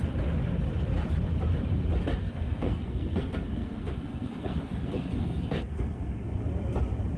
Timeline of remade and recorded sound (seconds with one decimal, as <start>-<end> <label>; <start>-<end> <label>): 0.0-2.2 recorded; 2.2-6.4 remade; 6.4-7.2 recorded